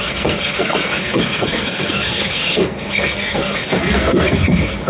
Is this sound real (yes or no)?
no